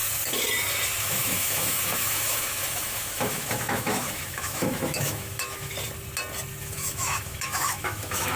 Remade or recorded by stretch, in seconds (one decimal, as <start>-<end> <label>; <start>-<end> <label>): 0.0-1.0 recorded; 1.0-5.7 remade; 5.7-6.6 recorded; 6.6-8.4 remade